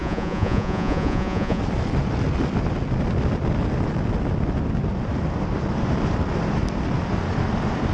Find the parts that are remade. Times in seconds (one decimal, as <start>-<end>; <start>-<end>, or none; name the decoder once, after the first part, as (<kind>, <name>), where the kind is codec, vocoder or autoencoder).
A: 0.0-1.6 (vocoder, Vocos)

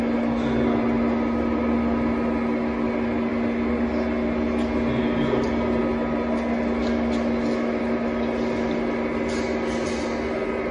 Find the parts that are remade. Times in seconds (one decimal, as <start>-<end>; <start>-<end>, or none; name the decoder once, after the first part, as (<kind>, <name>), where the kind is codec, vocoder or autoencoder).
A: none

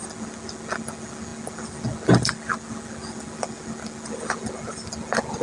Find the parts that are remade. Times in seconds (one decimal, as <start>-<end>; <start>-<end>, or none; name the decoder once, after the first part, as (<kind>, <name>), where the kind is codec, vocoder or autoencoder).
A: none

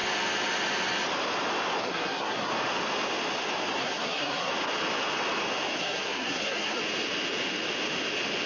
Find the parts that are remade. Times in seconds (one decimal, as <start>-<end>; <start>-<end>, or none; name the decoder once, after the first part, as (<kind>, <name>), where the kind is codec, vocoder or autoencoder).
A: 1.8-2.5 (codec, SNAC); 3.8-4.5; 5.8-6.8

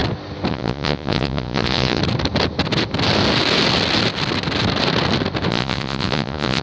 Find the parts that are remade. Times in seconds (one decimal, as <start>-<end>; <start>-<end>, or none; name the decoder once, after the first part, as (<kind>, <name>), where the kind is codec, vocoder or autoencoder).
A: 0.5-2.0 (vocoder, Vocos); 5.5-6.6

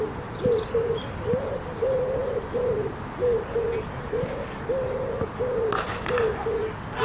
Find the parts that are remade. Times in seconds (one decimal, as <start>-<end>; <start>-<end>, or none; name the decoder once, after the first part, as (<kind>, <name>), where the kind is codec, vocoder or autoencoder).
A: none